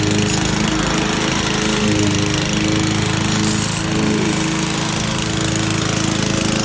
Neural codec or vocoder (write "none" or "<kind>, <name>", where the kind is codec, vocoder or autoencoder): none